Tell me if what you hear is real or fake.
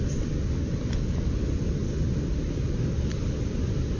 real